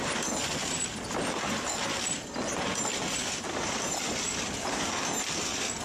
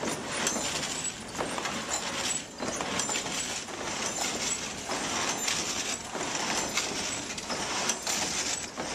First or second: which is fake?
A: first